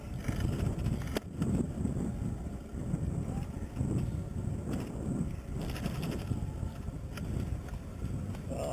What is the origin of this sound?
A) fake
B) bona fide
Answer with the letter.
B